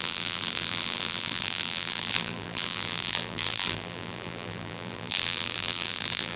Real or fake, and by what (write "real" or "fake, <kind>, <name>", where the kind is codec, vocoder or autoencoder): fake, vocoder, BigVGAN v2